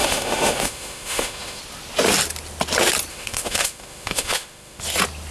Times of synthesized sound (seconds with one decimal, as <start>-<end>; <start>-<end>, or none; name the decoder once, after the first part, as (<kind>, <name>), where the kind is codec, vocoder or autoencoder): 0.0-1.6 (autoencoder, DAC-VAE); 3.1-4.8